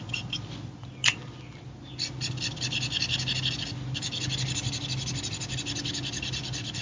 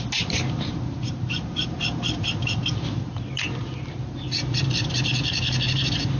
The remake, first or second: second